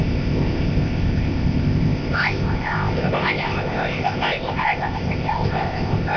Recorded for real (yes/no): no